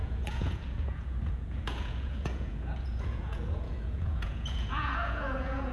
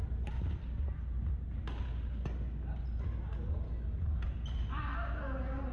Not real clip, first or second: first